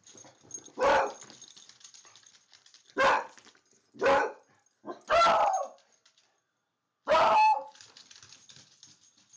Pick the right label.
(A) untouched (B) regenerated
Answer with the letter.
A